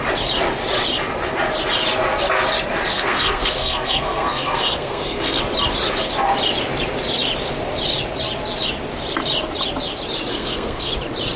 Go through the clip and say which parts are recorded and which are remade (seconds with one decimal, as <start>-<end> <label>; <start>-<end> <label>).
0.0-2.9 recorded; 2.9-5.4 remade; 5.4-10.3 recorded; 10.3-10.9 remade; 10.9-11.4 recorded